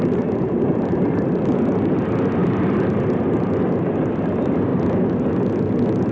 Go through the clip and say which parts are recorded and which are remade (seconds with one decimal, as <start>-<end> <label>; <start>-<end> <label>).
0.0-4.7 remade; 4.7-5.5 recorded; 5.5-6.1 remade